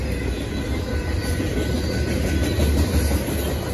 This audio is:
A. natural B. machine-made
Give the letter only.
A